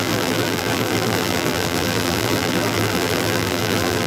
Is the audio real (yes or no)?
no